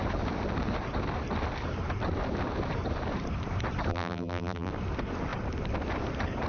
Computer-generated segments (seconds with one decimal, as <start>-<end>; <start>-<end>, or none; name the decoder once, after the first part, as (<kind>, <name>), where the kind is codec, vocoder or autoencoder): 3.9-4.7 (vocoder, BigVGAN v2)